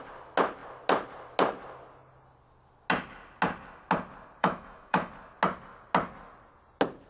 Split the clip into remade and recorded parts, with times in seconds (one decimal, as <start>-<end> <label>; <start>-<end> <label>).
0.0-4.4 recorded; 4.4-5.1 remade; 5.1-7.1 recorded